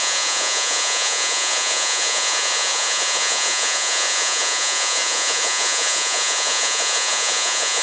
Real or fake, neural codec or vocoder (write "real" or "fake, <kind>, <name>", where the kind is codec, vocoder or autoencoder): fake, vocoder, Vocos